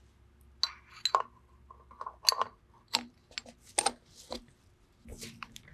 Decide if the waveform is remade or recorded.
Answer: recorded